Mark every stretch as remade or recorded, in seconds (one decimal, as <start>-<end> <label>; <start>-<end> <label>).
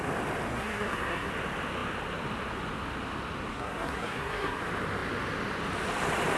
0.0-0.5 recorded; 0.5-1.3 remade; 1.3-3.5 recorded; 3.5-4.6 remade; 4.6-6.4 recorded